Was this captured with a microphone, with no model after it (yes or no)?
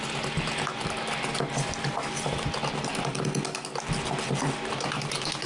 yes